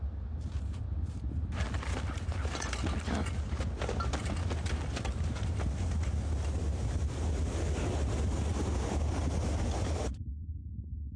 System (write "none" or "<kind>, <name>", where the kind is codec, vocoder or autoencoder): none